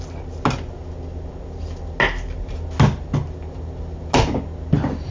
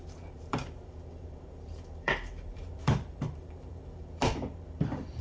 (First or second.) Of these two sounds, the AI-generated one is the second